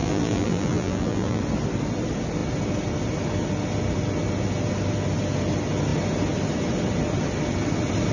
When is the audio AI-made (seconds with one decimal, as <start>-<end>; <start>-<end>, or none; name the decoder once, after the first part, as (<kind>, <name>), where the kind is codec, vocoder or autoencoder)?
0.0-1.4 (vocoder, BigVGAN v2)